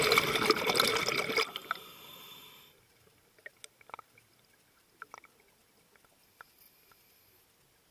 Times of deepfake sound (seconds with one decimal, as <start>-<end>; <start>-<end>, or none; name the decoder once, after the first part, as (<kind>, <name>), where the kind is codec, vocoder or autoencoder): none